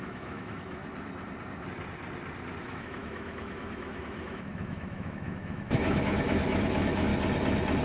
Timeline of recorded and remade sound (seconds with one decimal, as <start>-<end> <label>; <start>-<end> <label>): 0.0-0.8 remade; 0.8-2.6 recorded; 2.6-7.1 remade; 7.1-7.8 recorded

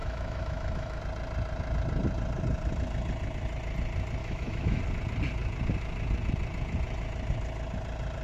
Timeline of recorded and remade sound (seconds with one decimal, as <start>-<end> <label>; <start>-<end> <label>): 0.0-1.0 remade; 1.0-4.2 recorded; 4.2-4.8 remade; 4.8-8.2 recorded

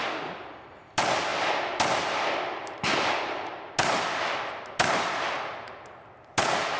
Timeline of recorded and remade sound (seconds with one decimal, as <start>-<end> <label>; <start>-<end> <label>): 0.0-6.8 recorded

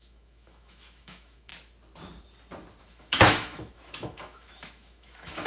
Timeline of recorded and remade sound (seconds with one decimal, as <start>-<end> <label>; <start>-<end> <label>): 0.0-1.5 remade; 1.5-2.8 recorded; 2.8-5.5 remade

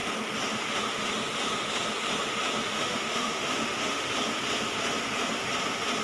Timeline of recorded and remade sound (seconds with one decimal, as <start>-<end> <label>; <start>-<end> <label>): 0.0-2.6 recorded; 2.6-4.1 remade; 4.1-6.0 recorded

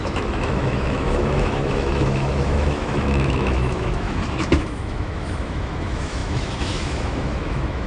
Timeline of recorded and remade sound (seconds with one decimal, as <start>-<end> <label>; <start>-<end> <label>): 0.0-7.9 remade

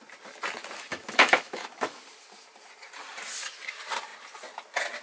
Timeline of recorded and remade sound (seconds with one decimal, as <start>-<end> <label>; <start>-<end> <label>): 0.0-0.9 recorded; 0.9-2.0 remade; 2.0-5.0 recorded

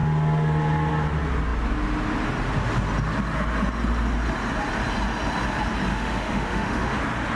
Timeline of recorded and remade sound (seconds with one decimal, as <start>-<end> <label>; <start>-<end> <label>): 0.0-5.9 recorded; 5.9-7.0 remade; 7.0-7.4 recorded